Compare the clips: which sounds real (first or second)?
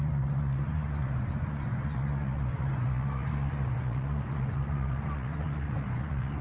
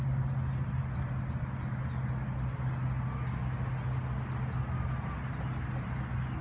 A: second